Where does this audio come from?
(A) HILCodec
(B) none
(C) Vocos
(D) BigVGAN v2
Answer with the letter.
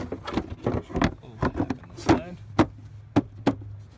B